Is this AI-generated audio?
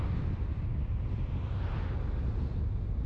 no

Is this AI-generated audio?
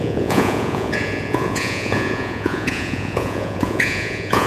yes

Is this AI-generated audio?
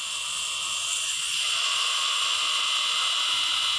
yes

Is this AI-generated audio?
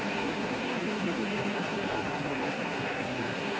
yes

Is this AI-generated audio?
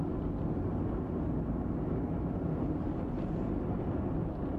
no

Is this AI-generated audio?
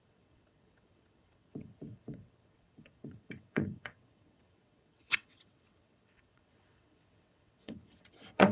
yes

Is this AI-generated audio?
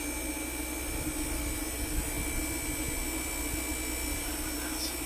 no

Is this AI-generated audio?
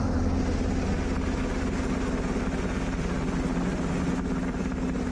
no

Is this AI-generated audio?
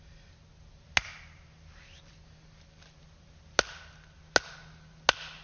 no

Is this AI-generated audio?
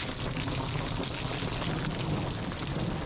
no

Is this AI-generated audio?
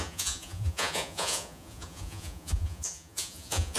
yes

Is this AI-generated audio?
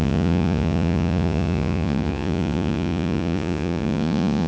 yes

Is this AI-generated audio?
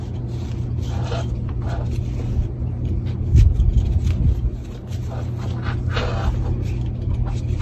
no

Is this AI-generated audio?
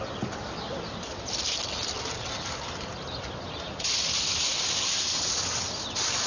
no